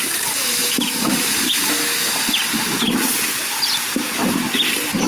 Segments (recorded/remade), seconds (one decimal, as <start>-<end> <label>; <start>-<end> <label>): 0.0-0.6 recorded; 0.6-1.7 remade; 1.7-5.1 recorded